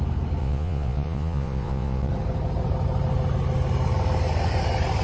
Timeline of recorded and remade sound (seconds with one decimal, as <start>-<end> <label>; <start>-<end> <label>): 0.0-0.4 recorded; 0.4-2.1 remade; 2.1-5.0 recorded